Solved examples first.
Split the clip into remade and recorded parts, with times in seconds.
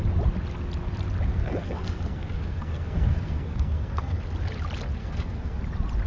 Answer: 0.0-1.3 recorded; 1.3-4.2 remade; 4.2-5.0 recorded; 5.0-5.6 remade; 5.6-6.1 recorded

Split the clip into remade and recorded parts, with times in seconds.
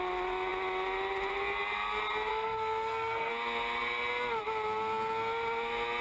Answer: 0.0-2.3 recorded; 2.3-3.3 remade; 3.3-6.0 recorded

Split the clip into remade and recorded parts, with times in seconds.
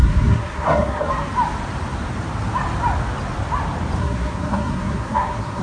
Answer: 0.0-1.1 remade; 1.1-4.0 recorded; 4.0-5.6 remade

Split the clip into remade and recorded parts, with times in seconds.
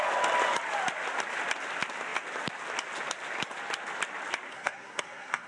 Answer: 0.0-4.5 recorded; 4.5-5.5 remade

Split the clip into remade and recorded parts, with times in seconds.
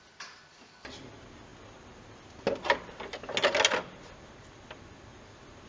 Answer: 0.0-5.7 recorded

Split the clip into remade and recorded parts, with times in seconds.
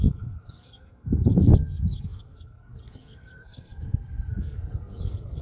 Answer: 0.0-5.4 remade